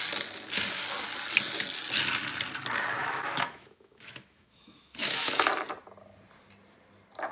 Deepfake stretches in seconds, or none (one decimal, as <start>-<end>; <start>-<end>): 3.0-5.5